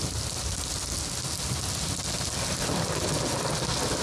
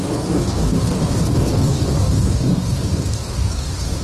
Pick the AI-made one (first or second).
second